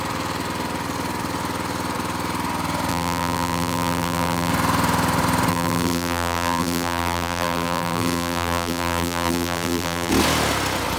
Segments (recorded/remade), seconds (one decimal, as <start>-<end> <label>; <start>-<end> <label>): 0.0-2.9 recorded; 2.9-4.5 remade; 4.5-5.5 recorded; 5.5-10.1 remade; 10.1-11.0 recorded